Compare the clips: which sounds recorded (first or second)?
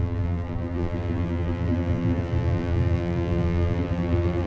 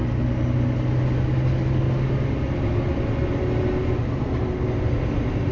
second